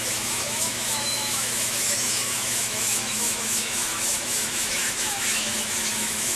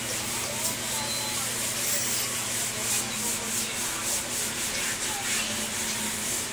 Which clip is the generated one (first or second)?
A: first